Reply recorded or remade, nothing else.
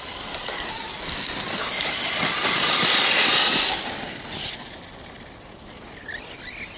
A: recorded